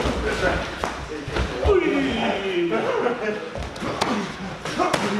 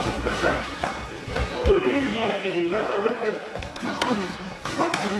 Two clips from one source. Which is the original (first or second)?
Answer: first